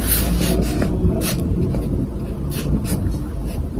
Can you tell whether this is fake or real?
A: real